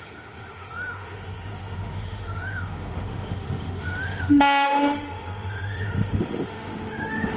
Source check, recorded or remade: remade